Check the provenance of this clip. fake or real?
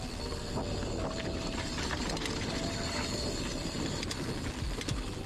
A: real